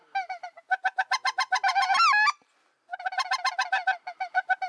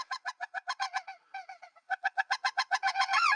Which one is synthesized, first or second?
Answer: second